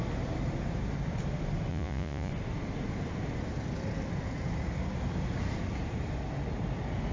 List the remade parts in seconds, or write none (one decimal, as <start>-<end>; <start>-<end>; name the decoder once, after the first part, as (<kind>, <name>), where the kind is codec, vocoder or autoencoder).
1.7-2.3 (vocoder, Vocos)